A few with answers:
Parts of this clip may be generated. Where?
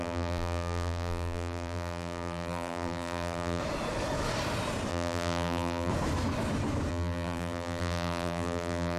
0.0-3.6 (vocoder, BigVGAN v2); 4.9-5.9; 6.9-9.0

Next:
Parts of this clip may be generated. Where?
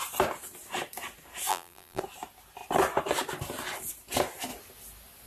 1.5-2.0 (vocoder, BigVGAN v2)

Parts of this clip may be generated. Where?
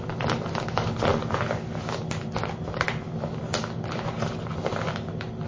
none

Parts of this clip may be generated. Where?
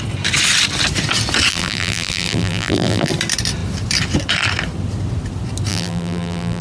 1.5-3.1 (vocoder, BigVGAN v2); 5.7-6.6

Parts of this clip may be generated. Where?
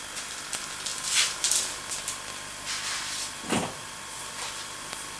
0.9-2.2 (vocoder, BigVGAN v2); 3.6-4.2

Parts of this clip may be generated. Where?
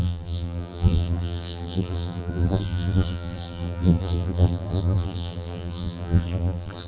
0.0-6.9 (vocoder, BigVGAN v2)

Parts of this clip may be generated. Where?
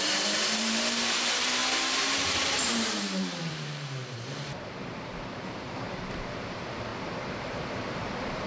0.0-6.9 (vocoder, BigVGAN v2); 7.4-8.5